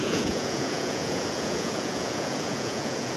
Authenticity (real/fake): fake